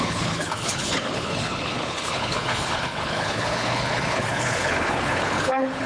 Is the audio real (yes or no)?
no